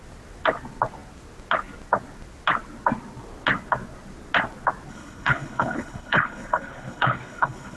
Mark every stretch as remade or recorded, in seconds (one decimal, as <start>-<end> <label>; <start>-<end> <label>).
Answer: 0.0-4.9 recorded; 4.9-7.8 remade